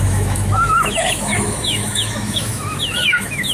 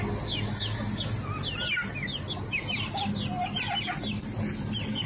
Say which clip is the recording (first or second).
second